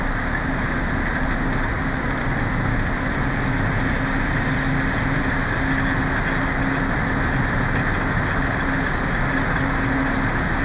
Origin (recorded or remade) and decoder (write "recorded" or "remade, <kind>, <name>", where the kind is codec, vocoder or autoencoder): recorded